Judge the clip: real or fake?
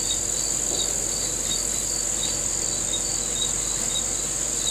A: real